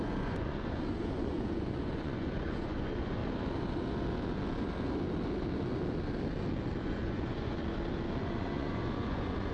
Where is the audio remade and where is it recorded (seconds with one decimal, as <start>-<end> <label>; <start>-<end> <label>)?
0.0-3.2 remade; 3.2-6.8 recorded; 6.8-7.6 remade; 7.6-8.2 recorded; 8.2-9.5 remade